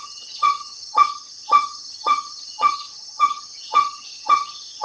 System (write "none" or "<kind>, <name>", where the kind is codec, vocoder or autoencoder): vocoder, HiFi-GAN